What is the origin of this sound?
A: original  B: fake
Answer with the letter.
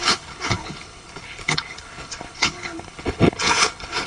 B